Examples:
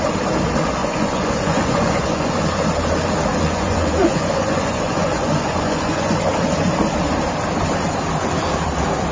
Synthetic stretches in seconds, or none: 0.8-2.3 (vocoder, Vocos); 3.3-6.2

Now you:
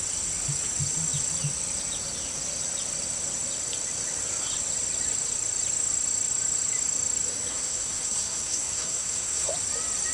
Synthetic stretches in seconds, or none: 7.5-9.5 (codec, SNAC)